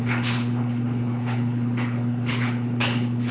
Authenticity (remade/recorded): remade